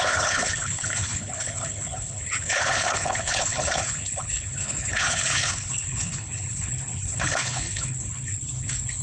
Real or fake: fake